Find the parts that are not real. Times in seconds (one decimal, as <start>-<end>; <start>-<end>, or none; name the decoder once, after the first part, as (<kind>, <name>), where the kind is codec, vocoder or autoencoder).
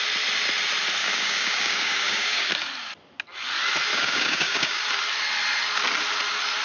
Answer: 1.0-2.5 (codec, DAC); 3.9-4.8